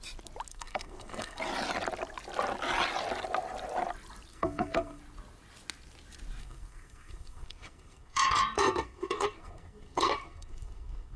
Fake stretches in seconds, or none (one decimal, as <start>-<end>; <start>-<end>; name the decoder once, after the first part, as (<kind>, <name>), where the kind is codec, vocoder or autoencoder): 0.5-1.4 (codec, SNAC); 4.3-5.0; 6.4-11.2